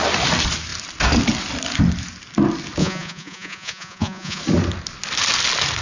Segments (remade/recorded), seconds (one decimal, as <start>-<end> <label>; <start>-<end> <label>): 0.0-2.8 recorded; 2.8-4.4 remade; 4.4-5.8 recorded